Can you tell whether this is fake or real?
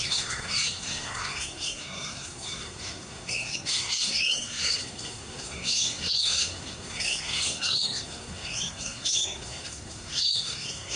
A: fake